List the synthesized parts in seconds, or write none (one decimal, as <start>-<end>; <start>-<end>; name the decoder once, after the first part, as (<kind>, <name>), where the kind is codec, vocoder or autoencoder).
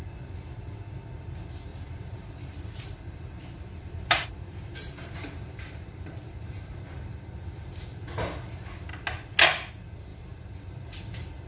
1.7-6.8 (vocoder, BigVGAN v2); 10.1-10.9